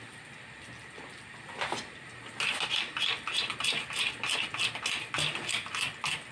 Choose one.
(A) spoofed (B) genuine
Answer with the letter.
B